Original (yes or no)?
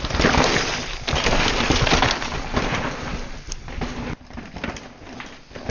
yes